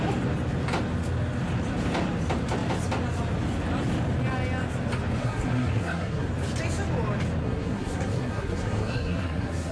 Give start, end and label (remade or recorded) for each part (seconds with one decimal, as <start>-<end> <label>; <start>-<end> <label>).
0.0-5.2 recorded; 5.2-6.3 remade; 6.3-7.4 recorded; 7.4-9.7 remade